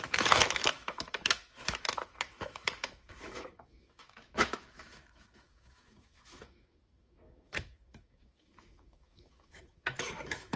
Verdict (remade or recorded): remade